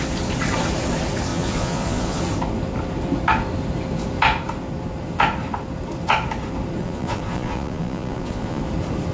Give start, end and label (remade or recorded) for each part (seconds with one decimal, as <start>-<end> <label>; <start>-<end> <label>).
0.0-1.3 recorded; 1.3-2.2 remade; 2.2-6.8 recorded; 6.8-8.6 remade; 8.6-9.1 recorded

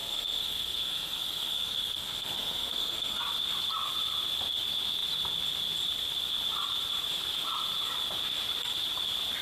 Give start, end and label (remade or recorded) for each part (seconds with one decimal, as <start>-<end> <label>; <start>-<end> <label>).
0.0-3.2 remade; 3.2-9.4 recorded

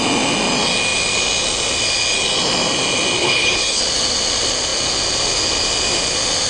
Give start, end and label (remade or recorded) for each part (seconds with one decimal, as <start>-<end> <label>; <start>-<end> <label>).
0.0-3.2 recorded; 3.2-3.8 remade; 3.8-6.5 recorded

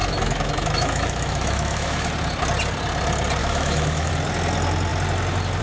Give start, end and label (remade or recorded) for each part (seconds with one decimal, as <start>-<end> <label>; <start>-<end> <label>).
0.0-2.1 remade; 2.1-3.4 recorded; 3.4-4.1 remade; 4.1-5.6 recorded

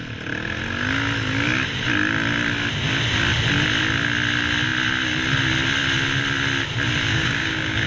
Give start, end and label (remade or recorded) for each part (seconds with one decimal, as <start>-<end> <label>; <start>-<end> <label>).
0.0-7.1 recorded; 7.1-7.9 remade

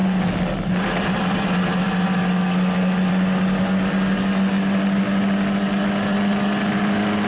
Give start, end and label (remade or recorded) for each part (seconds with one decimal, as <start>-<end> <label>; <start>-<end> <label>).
0.0-7.3 recorded

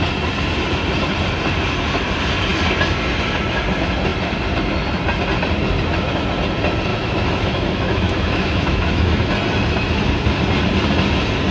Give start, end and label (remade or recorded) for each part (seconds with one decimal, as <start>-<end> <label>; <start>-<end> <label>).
0.0-6.9 recorded; 6.9-9.3 remade; 9.3-11.5 recorded

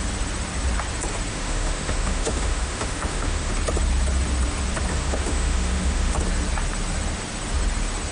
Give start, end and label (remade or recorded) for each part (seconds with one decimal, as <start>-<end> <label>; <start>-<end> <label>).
0.0-1.3 recorded; 1.3-3.5 remade; 3.5-4.9 recorded; 4.9-6.2 remade; 6.2-8.1 recorded